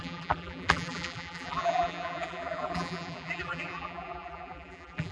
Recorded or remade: remade